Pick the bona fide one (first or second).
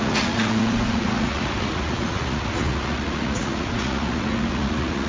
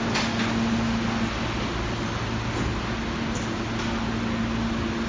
second